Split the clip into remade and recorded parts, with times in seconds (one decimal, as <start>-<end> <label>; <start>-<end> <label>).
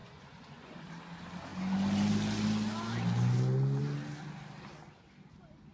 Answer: 0.0-0.9 remade; 0.9-5.7 recorded